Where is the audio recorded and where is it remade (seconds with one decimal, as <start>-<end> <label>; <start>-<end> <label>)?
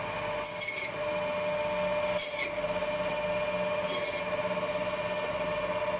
0.0-6.0 recorded